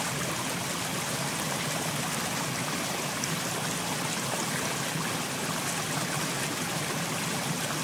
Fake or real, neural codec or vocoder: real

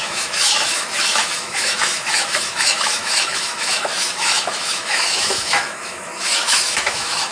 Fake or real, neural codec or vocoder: fake, autoencoder, DAC-VAE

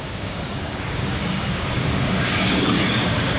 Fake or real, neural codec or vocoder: fake, codec, DAC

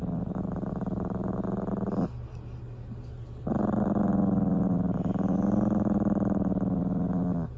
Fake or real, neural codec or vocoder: real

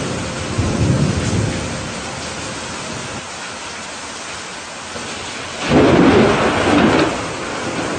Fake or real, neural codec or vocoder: real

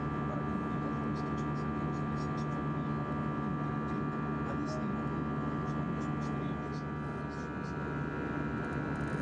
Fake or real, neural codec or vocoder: real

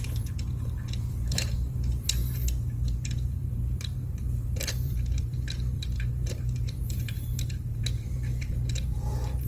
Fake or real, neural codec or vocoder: fake, vocoder, BigVGAN v2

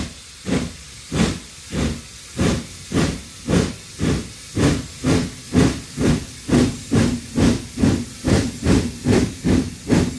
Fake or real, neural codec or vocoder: real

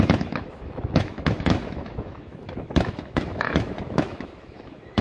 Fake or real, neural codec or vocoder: fake, autoencoder, DAC-VAE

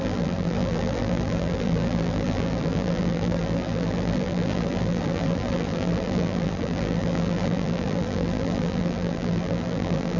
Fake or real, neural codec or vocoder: fake, vocoder, BigVGAN v2